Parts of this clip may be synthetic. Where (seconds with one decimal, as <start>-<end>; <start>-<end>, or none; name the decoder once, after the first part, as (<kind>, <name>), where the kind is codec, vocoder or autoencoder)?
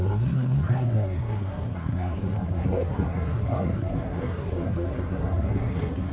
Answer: 0.0-6.1 (codec, SNAC)